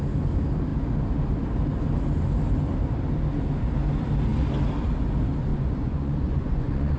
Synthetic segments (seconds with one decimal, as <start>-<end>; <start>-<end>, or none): 5.5-7.0